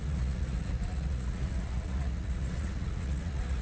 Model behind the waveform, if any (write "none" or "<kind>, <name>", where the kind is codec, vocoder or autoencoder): vocoder, Vocos